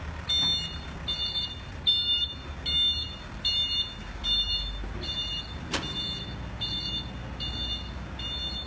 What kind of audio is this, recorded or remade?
recorded